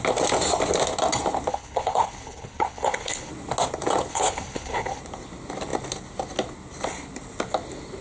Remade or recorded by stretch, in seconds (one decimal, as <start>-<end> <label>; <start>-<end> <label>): 0.0-1.5 recorded; 1.5-3.3 remade; 3.3-4.1 recorded; 4.1-5.0 remade; 5.0-8.0 recorded